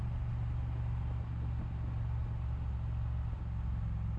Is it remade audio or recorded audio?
recorded